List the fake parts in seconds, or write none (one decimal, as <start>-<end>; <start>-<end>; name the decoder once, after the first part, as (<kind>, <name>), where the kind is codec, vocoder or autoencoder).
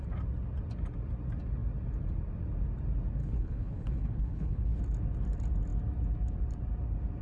3.2-4.8 (codec, HILCodec)